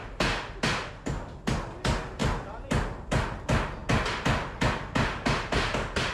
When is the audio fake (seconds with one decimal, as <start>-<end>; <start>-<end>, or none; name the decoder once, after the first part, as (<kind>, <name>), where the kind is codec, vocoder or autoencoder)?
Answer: none